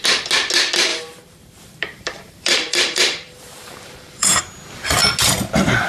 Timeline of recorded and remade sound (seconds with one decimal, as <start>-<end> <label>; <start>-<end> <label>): 0.0-0.9 recorded; 0.9-4.4 remade; 4.4-5.9 recorded